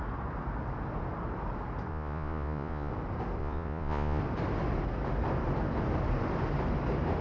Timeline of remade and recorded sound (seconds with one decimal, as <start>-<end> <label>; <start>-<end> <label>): 0.0-1.9 recorded; 1.9-2.9 remade; 2.9-3.4 recorded; 3.4-4.2 remade; 4.2-7.2 recorded